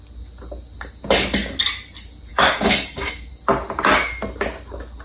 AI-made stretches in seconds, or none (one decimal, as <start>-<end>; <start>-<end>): 2.3-3.3